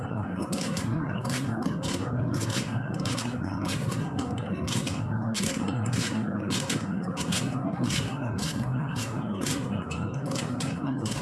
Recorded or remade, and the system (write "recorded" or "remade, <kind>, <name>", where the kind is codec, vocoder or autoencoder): remade, codec, SNAC